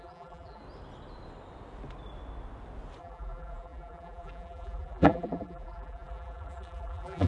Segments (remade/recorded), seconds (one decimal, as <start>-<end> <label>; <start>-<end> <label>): 0.0-0.6 remade; 0.6-3.0 recorded; 3.0-7.3 remade